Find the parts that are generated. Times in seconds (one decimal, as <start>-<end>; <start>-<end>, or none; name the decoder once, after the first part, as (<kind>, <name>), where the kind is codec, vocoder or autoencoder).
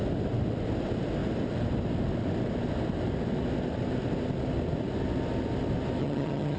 6.0-6.6 (vocoder, HiFi-GAN)